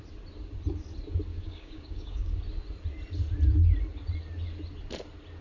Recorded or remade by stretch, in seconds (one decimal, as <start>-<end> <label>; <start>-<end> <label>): 0.0-1.3 recorded; 1.3-2.4 remade; 2.4-5.4 recorded